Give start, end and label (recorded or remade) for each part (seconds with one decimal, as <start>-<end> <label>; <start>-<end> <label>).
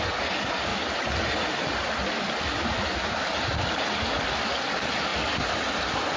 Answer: 0.0-6.2 recorded